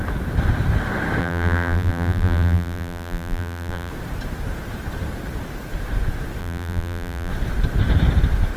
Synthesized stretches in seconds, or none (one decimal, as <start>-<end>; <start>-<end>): 1.2-3.9; 6.4-7.3